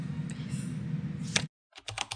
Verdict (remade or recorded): recorded